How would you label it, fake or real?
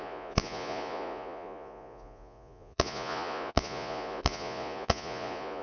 fake